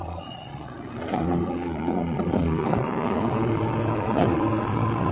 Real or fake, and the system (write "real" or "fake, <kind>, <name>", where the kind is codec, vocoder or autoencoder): fake, vocoder, Vocos